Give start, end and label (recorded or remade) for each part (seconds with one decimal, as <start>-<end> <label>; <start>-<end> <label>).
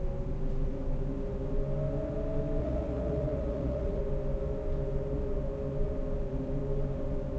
0.0-2.6 recorded; 2.6-4.0 remade; 4.0-7.4 recorded